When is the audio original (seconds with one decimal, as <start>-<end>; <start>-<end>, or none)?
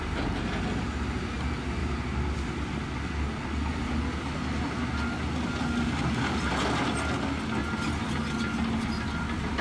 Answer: 0.0-9.6